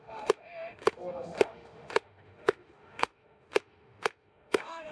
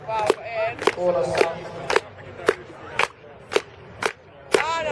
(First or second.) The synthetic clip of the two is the first